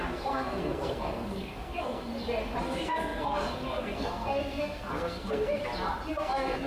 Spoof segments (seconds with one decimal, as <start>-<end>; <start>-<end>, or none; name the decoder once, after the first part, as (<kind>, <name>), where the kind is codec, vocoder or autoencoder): 0.0-2.1 (codec, SNAC); 2.6-5.6; 6.1-6.7